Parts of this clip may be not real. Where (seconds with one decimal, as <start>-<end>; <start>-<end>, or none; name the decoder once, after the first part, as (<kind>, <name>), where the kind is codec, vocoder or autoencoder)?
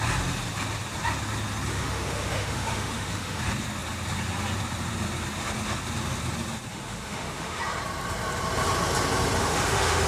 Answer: 1.7-3.4 (autoencoder, DAC-VAE); 6.7-7.6; 9.4-10.1